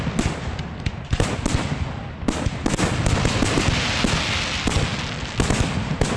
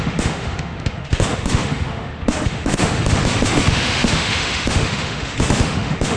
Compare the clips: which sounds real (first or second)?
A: first